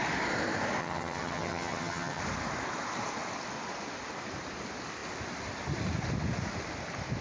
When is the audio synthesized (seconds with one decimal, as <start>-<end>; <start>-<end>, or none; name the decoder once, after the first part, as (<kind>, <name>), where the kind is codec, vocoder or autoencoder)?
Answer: 0.8-2.2 (vocoder, HiFi-GAN)